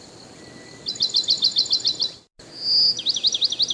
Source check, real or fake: real